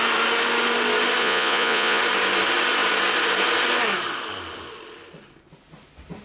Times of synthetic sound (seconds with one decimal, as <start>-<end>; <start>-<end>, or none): 1.2-2.0